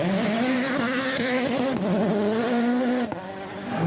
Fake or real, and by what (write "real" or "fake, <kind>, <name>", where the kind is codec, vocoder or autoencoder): fake, vocoder, BigVGAN v2